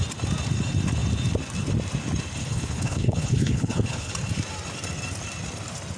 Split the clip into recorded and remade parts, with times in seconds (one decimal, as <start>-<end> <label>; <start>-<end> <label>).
0.0-2.4 recorded; 2.4-4.1 remade; 4.1-6.0 recorded